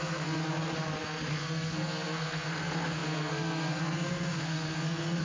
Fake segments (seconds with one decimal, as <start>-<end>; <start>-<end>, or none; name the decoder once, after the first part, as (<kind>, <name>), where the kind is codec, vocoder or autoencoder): 0.0-0.4 (codec, SNAC); 1.3-5.2

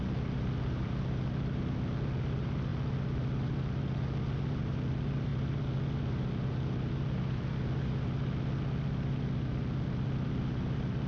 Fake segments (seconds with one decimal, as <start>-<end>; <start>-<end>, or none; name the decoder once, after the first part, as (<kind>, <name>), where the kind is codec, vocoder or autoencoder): none